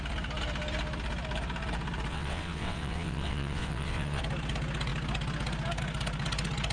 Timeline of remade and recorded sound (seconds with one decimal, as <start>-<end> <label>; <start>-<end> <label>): 0.0-2.1 recorded; 2.1-4.2 remade; 4.2-6.7 recorded